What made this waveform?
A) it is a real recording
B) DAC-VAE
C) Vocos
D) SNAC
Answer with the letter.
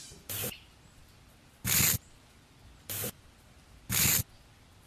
A